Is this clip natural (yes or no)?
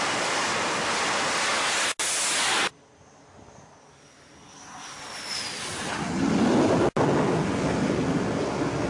yes